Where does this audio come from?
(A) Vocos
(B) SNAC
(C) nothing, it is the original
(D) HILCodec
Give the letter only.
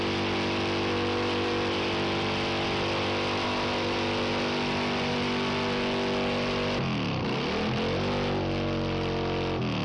C